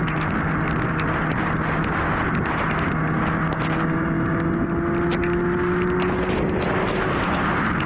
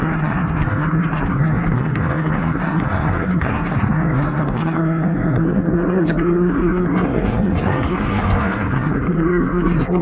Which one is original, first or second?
first